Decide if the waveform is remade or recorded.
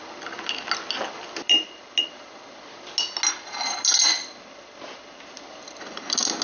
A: recorded